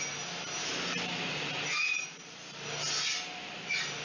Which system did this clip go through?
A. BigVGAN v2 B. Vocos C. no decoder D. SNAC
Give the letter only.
C